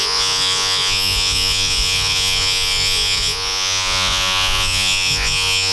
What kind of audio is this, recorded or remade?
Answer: remade